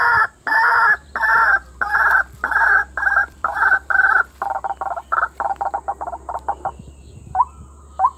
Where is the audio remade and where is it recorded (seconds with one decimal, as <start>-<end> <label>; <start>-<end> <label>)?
0.0-3.2 recorded; 3.2-3.9 remade; 3.9-8.2 recorded